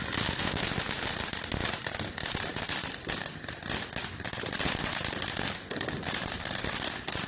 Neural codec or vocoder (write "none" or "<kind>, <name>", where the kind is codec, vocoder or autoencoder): none